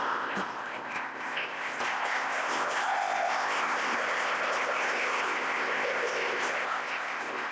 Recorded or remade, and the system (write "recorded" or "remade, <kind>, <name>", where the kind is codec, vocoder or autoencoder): remade, codec, ZipCodec